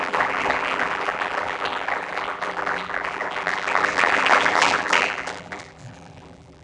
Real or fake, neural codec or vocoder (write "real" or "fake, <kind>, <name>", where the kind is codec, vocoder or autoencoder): fake, vocoder, BigVGAN v2